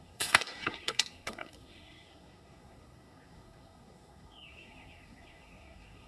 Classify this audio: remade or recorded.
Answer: remade